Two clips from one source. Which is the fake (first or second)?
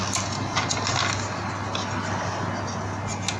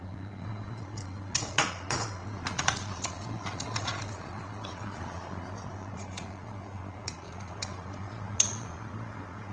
second